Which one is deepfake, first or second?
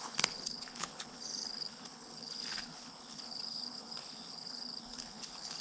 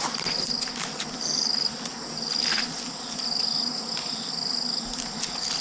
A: first